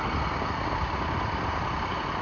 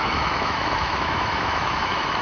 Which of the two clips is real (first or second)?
first